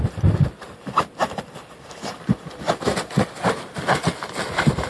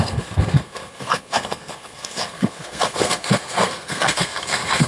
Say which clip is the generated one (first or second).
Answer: second